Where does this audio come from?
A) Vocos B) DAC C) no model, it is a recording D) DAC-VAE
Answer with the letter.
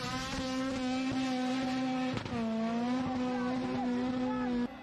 C